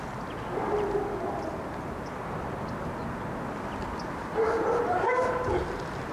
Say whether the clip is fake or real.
real